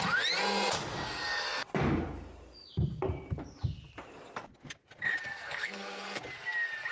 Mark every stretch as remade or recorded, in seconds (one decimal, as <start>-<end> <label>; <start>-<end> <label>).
0.0-5.3 recorded; 5.3-6.2 remade; 6.2-6.9 recorded